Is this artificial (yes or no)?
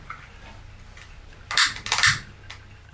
no